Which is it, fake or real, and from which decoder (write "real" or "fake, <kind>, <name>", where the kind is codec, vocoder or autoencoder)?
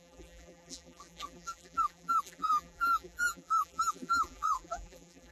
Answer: fake, vocoder, BigVGAN v2